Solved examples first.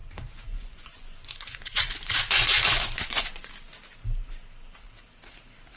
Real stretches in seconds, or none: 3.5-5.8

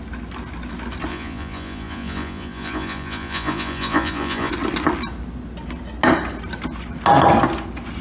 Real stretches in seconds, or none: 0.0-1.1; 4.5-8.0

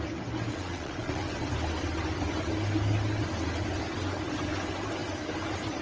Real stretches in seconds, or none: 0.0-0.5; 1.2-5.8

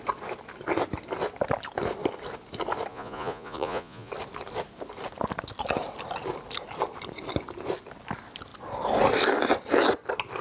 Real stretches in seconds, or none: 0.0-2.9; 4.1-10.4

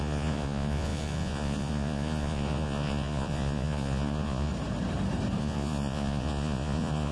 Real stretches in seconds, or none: 4.5-5.4

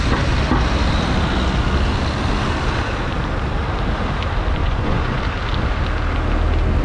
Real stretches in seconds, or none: 0.0-4.6; 5.2-6.8

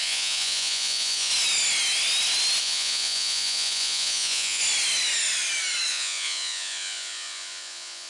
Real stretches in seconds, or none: 1.3-2.6; 4.6-5.9

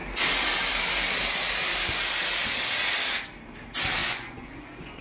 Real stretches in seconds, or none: 0.0-4.0